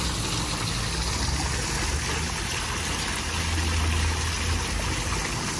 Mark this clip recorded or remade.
recorded